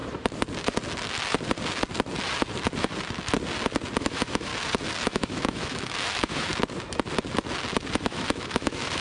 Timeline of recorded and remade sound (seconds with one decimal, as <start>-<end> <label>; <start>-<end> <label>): 0.0-4.0 recorded; 4.0-4.5 remade; 4.5-5.0 recorded; 5.0-6.5 remade; 6.5-8.0 recorded; 8.0-9.0 remade